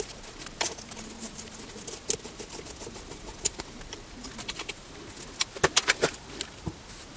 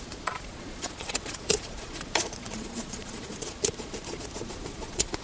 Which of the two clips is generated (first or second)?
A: second